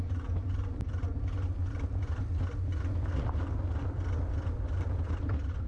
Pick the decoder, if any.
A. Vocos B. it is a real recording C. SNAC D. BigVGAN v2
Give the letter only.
B